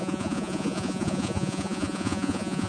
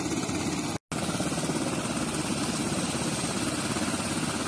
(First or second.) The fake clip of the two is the first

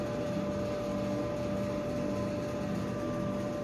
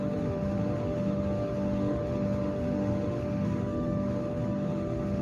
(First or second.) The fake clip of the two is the second